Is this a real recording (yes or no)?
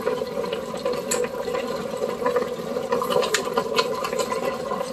yes